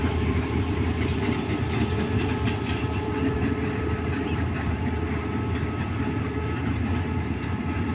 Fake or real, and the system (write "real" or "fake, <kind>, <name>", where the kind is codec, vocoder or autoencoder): fake, vocoder, BigVGAN v2